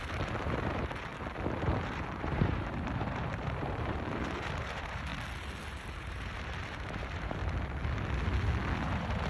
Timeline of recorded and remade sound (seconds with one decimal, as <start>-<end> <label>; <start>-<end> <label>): 0.0-1.1 remade; 1.1-1.6 recorded; 1.6-5.1 remade; 5.1-6.0 recorded; 6.0-7.4 remade; 7.4-8.8 recorded; 8.8-9.3 remade